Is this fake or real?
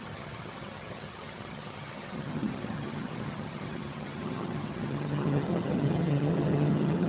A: fake